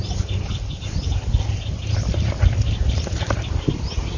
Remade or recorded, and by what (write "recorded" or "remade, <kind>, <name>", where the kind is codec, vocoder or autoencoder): recorded